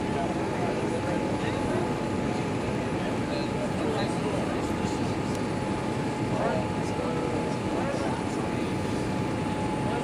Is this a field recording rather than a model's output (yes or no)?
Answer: yes